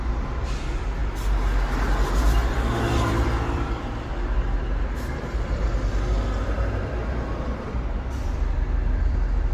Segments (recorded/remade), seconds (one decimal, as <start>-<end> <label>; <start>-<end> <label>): 0.0-1.0 remade; 1.0-2.5 recorded; 2.5-9.5 remade

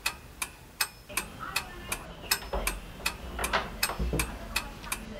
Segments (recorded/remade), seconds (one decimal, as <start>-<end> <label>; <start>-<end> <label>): 0.0-5.2 recorded

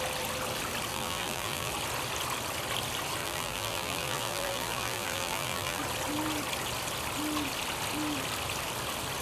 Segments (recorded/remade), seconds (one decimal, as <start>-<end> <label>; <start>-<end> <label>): 0.0-0.9 recorded; 0.9-1.7 remade; 1.7-3.2 recorded; 3.2-5.8 remade; 5.8-9.2 recorded

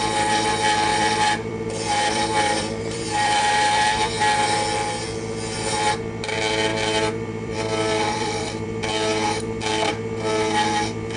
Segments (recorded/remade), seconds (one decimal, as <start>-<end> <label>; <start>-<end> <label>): 0.0-0.9 recorded; 0.9-4.2 remade; 4.2-6.7 recorded; 6.7-8.9 remade; 8.9-11.2 recorded